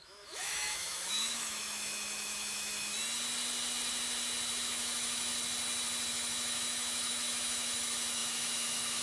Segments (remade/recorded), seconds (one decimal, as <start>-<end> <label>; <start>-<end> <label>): 0.0-2.9 remade; 2.9-4.5 recorded; 4.5-5.3 remade; 5.3-6.1 recorded; 6.1-9.0 remade